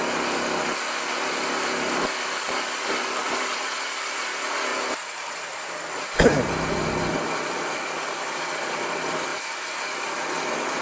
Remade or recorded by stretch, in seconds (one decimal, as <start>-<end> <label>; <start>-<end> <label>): 0.0-4.7 recorded; 4.7-6.1 remade; 6.1-10.8 recorded